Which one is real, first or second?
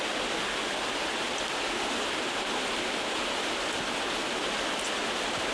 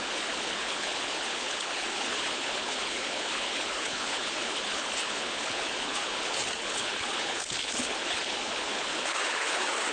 first